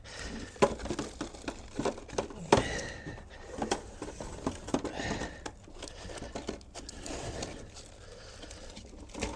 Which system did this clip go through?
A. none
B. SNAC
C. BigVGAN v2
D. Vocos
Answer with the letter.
A